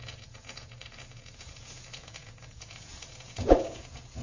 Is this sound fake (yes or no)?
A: yes